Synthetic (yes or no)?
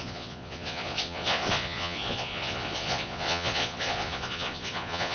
yes